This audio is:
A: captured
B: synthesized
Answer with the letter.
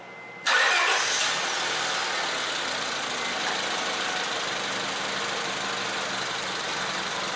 A